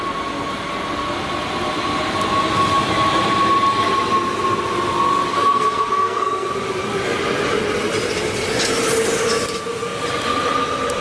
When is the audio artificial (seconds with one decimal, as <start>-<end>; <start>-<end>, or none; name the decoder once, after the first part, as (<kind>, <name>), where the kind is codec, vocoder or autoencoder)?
5.3-6.5 (codec, SNAC)